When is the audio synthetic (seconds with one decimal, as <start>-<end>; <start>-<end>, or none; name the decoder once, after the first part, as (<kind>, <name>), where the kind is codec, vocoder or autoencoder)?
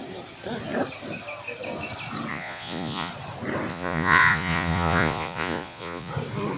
2.3-3.1 (vocoder, Vocos); 3.7-6.1